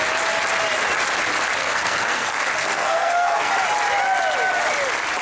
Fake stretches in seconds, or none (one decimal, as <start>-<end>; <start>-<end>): 1.6-3.5